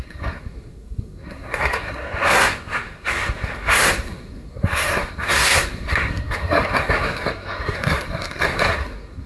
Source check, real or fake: fake